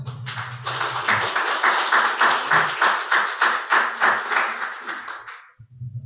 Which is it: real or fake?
real